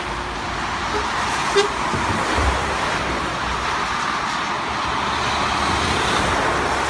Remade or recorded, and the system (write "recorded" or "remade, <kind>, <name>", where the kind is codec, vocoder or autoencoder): recorded